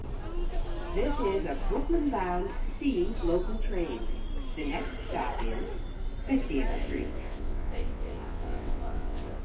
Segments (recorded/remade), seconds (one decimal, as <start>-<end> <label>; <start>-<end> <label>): 0.0-6.7 recorded; 6.7-9.4 remade